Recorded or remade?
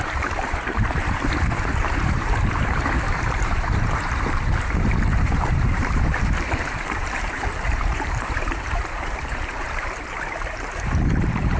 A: remade